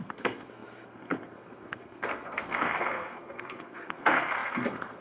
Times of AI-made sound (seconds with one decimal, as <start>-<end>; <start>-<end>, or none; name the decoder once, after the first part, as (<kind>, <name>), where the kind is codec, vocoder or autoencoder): 0.0-5.0 (codec, SNAC)